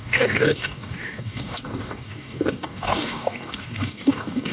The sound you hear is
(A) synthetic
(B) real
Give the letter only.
A